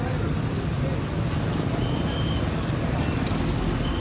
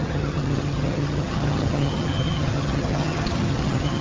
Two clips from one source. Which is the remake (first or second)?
second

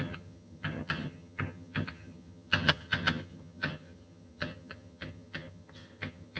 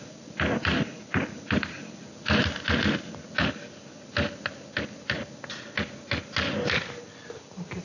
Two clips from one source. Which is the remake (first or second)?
first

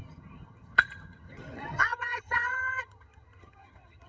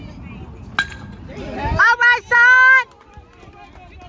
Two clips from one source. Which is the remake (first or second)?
first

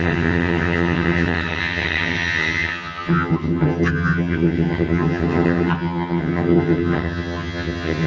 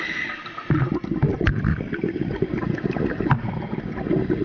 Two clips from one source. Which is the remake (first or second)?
first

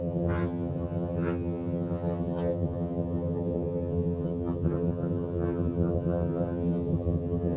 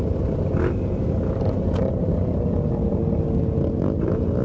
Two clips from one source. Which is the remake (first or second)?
first